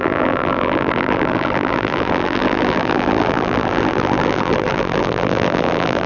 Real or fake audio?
fake